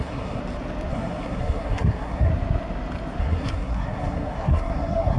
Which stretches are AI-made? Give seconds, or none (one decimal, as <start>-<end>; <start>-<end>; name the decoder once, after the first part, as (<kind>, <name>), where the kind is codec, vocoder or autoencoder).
0.0-0.4 (codec, SNAC); 0.9-2.3; 3.2-5.2